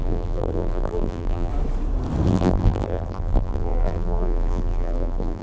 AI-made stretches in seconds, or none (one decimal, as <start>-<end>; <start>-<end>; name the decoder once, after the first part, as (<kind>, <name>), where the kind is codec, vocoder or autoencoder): 0.0-1.5 (vocoder, BigVGAN v2); 2.3-5.4